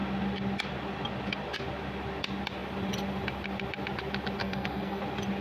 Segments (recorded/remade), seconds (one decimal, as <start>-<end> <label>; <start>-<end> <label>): 0.0-4.4 recorded; 4.4-5.0 remade; 5.0-5.4 recorded